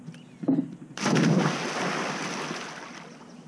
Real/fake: real